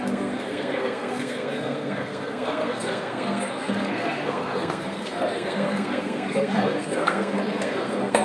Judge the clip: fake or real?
fake